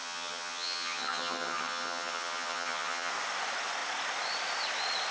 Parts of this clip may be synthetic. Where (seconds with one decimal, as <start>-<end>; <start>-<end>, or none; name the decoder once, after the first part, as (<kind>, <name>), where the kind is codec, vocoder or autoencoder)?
0.0-3.1 (vocoder, HiFi-GAN)